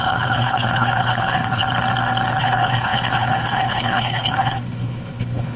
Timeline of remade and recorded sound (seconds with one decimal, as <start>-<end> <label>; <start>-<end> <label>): 0.0-1.6 remade; 1.6-2.4 recorded; 2.4-5.6 remade